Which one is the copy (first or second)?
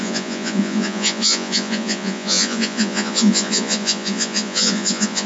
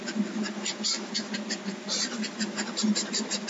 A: first